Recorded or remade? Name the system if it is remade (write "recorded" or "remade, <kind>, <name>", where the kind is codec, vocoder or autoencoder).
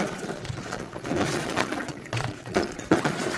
remade, vocoder, Vocos